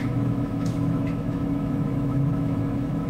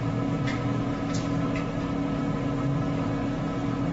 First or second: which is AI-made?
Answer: first